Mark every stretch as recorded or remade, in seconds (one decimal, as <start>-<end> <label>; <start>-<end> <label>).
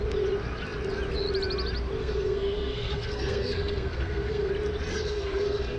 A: 0.0-2.0 recorded; 2.0-4.5 remade; 4.5-4.9 recorded; 4.9-5.8 remade